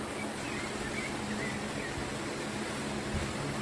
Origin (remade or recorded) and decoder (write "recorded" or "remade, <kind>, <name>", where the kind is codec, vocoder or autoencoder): recorded